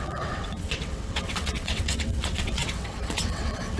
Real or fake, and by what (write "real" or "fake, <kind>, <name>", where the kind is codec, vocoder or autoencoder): fake, vocoder, WaveNeXt